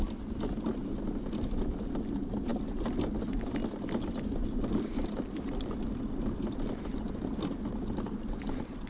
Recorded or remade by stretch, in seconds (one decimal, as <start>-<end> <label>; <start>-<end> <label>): 0.0-8.9 recorded